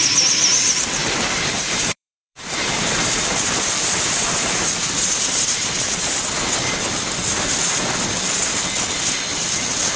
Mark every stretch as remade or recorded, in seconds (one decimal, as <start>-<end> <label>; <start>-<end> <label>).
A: 0.0-1.0 recorded; 1.0-6.2 remade; 6.2-10.0 recorded